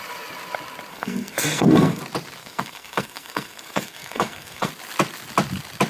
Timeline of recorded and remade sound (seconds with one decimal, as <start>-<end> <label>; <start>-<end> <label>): 0.0-0.9 recorded; 0.9-2.0 remade; 2.0-2.4 recorded; 2.4-4.7 remade; 4.7-5.9 recorded